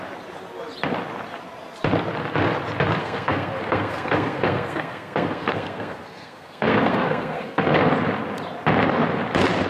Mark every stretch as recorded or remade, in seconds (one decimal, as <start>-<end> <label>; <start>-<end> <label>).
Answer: 0.0-3.0 recorded; 3.0-7.9 remade; 7.9-9.7 recorded

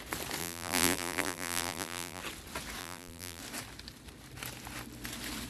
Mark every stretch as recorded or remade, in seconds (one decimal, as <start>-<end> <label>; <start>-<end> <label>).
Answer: 0.0-0.4 recorded; 0.4-2.2 remade; 2.2-2.8 recorded; 2.8-3.4 remade; 3.4-5.5 recorded

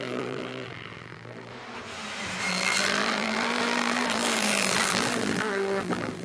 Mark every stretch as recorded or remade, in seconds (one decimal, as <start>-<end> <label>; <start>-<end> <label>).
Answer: 0.0-1.5 remade; 1.5-2.5 recorded; 2.5-6.2 remade

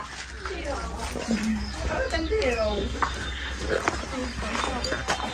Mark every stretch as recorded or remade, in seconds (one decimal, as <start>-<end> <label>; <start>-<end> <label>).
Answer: 0.0-1.5 recorded; 1.5-3.8 remade; 3.8-5.3 recorded

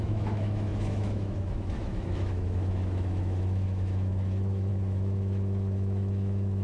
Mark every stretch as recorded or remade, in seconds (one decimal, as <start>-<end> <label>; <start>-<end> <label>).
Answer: 0.0-6.6 remade

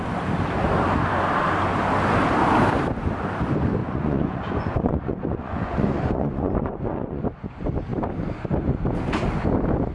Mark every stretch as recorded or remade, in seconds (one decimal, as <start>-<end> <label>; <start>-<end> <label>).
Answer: 0.0-3.8 recorded; 3.8-7.2 remade; 7.2-9.9 recorded